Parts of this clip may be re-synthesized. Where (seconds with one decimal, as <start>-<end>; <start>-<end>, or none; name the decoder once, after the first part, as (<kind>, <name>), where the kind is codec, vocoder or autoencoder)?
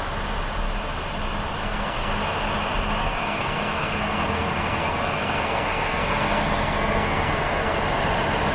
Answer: 1.6-2.1 (codec, SNAC); 3.0-7.8